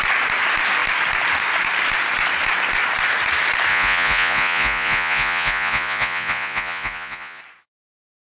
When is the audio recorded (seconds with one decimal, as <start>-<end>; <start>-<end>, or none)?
0.0-3.7; 7.4-8.3